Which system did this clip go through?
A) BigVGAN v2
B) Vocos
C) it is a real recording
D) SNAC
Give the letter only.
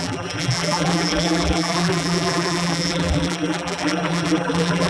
A